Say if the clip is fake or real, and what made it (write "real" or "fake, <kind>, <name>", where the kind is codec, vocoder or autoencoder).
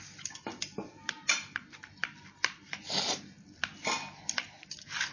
real